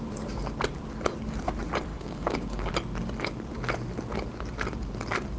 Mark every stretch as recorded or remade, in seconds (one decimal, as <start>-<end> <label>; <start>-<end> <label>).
0.0-1.9 recorded; 1.9-2.7 remade; 2.7-5.4 recorded